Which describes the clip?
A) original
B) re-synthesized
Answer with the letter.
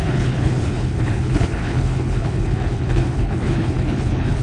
B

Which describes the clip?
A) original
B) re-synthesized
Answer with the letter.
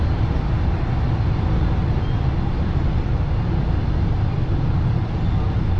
A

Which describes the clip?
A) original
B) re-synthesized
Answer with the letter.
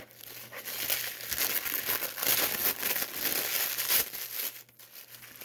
A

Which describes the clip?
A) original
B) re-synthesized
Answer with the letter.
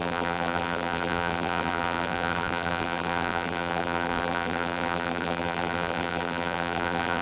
B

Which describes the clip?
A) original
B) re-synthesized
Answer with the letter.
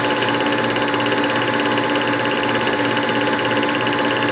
A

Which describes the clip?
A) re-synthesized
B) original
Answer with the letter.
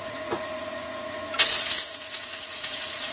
A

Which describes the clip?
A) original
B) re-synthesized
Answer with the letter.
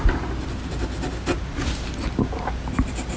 A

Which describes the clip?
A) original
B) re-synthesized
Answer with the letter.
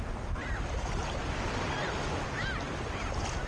A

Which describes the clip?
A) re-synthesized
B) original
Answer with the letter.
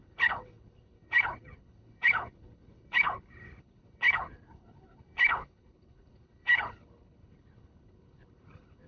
A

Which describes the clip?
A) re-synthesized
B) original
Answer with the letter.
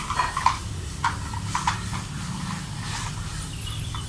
B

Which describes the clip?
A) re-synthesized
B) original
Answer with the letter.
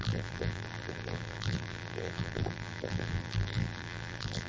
A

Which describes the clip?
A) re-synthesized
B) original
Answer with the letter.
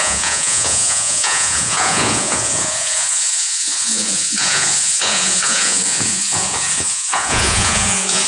A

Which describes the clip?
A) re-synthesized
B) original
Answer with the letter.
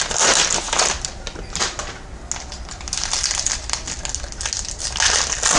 B